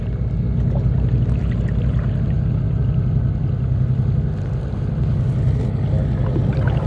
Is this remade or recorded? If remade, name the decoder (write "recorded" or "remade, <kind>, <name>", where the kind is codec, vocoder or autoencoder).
recorded